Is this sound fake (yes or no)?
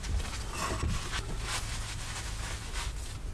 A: no